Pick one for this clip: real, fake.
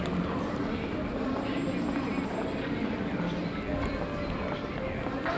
real